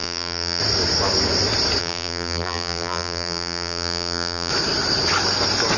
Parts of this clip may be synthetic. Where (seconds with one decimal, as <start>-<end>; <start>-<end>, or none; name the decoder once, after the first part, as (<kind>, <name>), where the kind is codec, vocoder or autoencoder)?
0.0-0.6 (vocoder, BigVGAN v2); 1.8-4.5